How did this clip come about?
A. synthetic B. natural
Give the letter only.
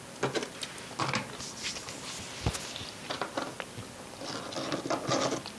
B